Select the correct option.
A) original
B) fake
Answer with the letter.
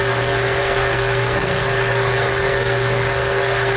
B